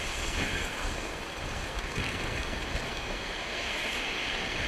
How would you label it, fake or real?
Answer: fake